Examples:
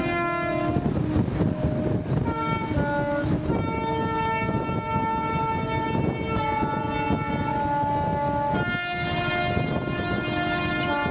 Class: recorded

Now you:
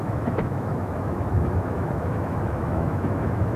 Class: remade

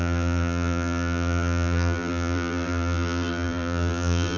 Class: remade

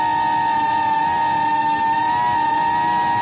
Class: recorded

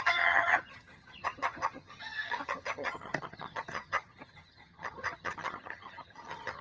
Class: remade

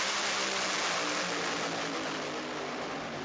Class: recorded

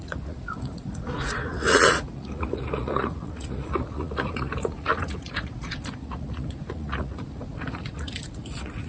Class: remade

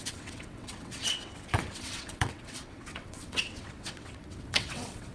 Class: remade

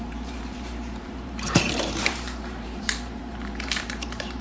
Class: remade